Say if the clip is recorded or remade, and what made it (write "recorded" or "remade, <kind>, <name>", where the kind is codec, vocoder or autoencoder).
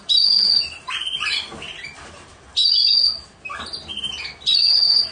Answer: recorded